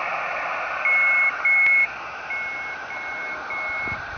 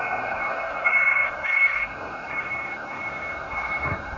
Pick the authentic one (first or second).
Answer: first